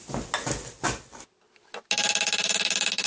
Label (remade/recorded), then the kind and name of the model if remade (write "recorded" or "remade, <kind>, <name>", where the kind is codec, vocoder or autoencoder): recorded